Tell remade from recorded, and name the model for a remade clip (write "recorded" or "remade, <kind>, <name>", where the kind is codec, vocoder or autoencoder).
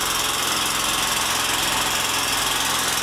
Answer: recorded